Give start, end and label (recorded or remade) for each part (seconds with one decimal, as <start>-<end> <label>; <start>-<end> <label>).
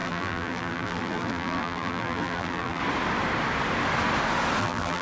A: 0.0-2.8 remade; 2.8-4.6 recorded; 4.6-5.0 remade